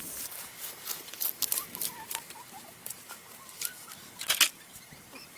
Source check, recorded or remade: remade